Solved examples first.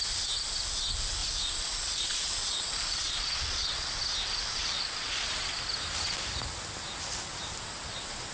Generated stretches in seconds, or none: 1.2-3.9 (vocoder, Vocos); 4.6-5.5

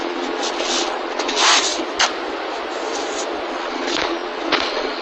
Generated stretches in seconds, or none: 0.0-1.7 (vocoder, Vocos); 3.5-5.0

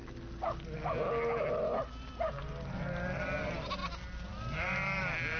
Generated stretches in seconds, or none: none